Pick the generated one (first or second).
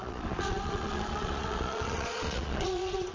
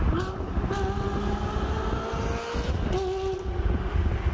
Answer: first